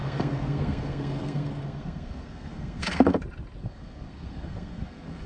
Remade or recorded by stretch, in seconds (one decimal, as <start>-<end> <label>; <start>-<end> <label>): 0.0-3.2 remade; 3.2-3.6 recorded; 3.6-5.3 remade